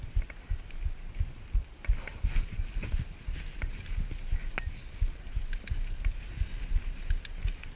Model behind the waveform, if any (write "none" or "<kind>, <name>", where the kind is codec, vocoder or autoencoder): none